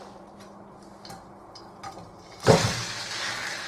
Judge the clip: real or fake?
real